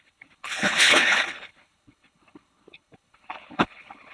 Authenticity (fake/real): fake